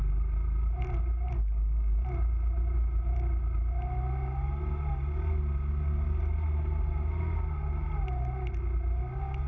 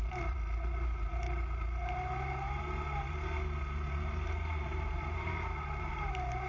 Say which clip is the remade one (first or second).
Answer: second